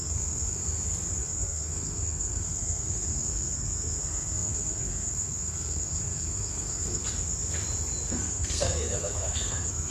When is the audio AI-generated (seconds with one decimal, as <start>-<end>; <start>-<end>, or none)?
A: 0.0-0.6; 1.2-7.0; 8.1-9.9